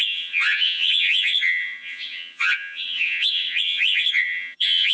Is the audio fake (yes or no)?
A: yes